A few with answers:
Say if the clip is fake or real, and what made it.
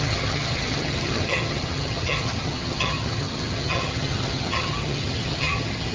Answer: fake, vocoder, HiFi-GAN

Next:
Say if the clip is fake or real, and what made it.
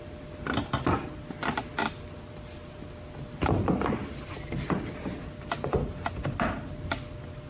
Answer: real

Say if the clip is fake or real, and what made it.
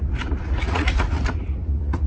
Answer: fake, vocoder, Vocos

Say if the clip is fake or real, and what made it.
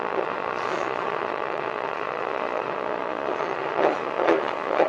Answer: fake, vocoder, Vocos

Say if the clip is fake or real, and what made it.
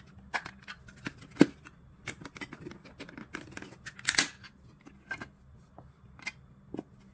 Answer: real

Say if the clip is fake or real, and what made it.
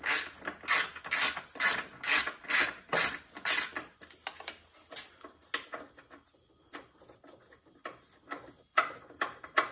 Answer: real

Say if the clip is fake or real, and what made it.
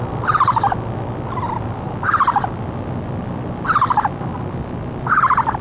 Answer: real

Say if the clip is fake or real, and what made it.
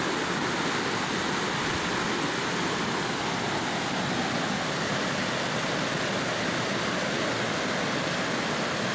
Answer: real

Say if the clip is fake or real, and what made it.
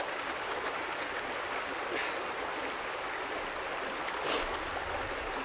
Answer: real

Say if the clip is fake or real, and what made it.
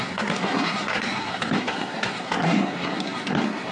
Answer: fake, codec, SNAC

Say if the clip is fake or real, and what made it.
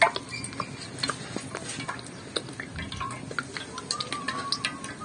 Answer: real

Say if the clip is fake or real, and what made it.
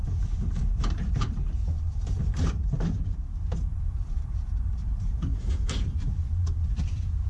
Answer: fake, vocoder, BigVGAN v2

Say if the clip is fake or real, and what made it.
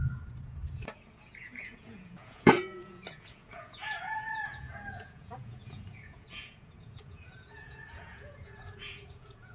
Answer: fake, vocoder, Vocos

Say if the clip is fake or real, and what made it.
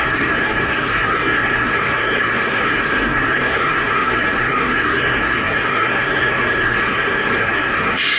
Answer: fake, codec, SNAC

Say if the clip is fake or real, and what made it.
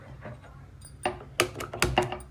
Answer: real